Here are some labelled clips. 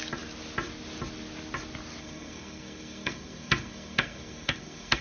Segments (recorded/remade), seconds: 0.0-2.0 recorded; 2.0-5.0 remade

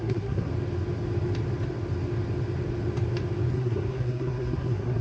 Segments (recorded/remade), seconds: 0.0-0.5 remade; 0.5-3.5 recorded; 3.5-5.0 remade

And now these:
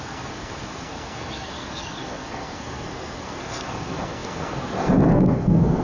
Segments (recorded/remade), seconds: 0.0-5.8 remade

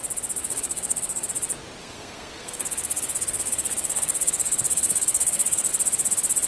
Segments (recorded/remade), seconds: 0.0-0.4 recorded; 0.4-1.3 remade; 1.3-1.8 recorded; 1.8-5.7 remade; 5.7-6.5 recorded

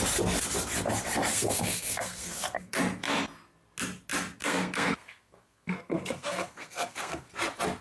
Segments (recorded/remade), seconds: 0.0-1.3 recorded; 1.3-2.8 remade; 2.8-4.4 recorded; 4.4-7.3 remade; 7.3-7.8 recorded